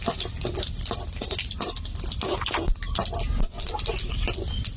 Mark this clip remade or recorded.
recorded